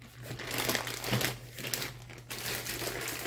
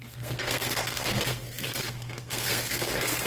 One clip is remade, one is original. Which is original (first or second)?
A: first